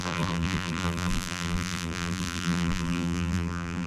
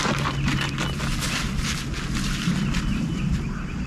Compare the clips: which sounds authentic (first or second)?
second